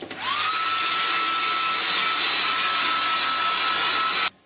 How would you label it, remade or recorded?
recorded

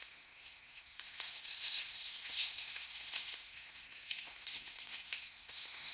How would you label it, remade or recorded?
remade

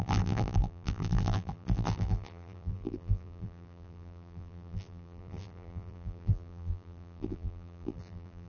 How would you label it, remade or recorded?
remade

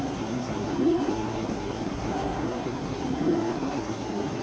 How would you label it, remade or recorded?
remade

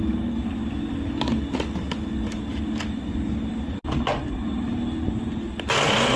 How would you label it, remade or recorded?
recorded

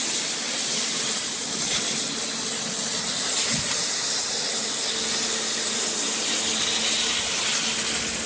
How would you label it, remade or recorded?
recorded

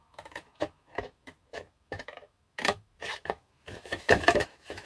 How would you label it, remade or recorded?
remade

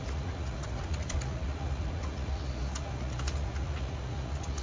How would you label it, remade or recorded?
remade